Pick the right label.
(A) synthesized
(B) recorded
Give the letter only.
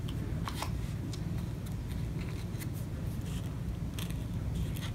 B